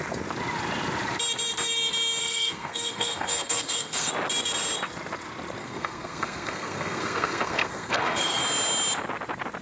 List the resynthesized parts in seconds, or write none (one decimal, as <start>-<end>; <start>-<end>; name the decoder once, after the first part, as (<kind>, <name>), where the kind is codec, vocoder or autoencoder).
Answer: 2.2-4.1 (codec, SNAC); 5.6-8.4